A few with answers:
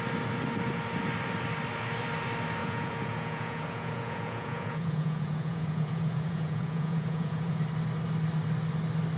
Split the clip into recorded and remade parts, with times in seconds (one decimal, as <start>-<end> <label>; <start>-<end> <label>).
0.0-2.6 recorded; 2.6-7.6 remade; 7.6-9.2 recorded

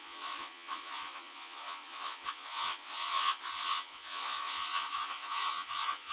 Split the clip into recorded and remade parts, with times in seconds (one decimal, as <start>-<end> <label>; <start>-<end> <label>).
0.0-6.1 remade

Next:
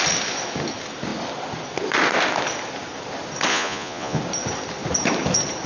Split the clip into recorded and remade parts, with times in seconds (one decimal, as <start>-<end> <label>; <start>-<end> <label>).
0.0-3.5 recorded; 3.5-4.2 remade; 4.2-5.7 recorded